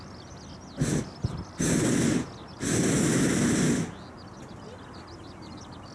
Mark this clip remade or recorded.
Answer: recorded